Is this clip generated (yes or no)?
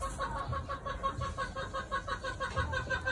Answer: no